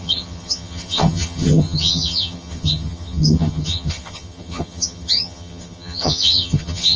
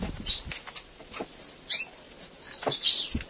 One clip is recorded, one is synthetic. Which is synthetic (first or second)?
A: first